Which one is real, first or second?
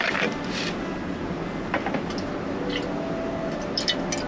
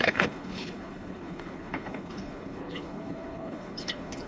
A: first